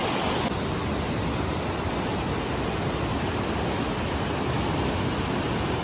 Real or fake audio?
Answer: real